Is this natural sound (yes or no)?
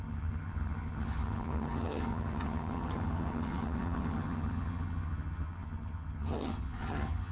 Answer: no